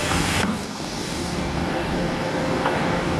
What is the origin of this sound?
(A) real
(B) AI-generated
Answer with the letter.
B